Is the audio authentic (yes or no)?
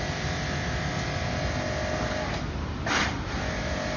yes